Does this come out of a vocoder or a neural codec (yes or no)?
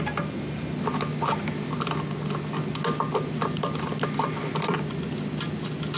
no